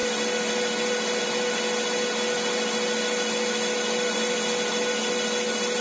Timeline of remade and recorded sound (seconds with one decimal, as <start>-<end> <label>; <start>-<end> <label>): 0.0-5.8 recorded